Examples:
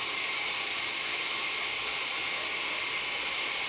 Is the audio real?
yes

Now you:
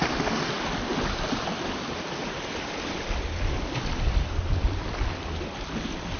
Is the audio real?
yes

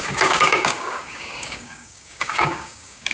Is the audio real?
no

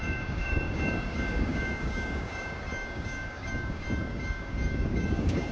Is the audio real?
no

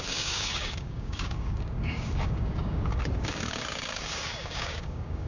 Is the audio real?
no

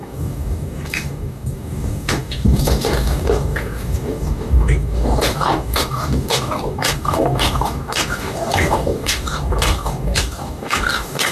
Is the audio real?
no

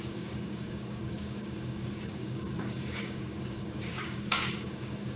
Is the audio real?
no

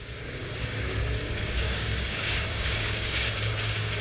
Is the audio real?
no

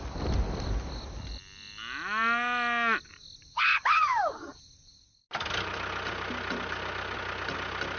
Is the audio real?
yes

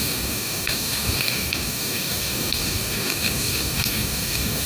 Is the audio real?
no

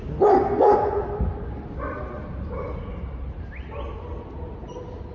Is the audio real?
yes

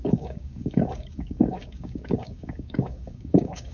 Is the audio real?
no